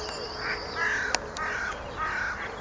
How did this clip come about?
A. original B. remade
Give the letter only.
A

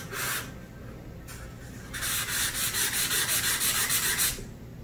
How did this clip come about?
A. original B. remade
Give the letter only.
A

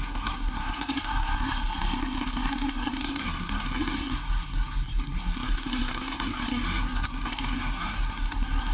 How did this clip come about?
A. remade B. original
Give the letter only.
A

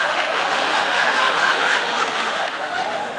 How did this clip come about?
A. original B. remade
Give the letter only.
B